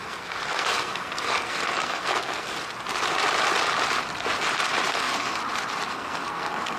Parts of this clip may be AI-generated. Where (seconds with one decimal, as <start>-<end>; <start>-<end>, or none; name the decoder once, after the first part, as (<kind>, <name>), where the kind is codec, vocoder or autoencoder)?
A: 0.0-2.5 (codec, SNAC); 4.9-5.4; 5.9-6.8